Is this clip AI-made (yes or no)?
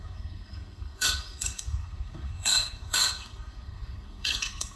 yes